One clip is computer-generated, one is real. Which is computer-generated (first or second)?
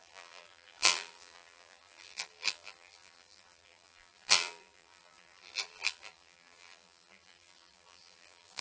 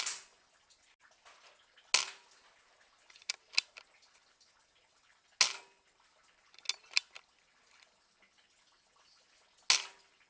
first